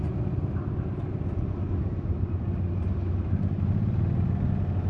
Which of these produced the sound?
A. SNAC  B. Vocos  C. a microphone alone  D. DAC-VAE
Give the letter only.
C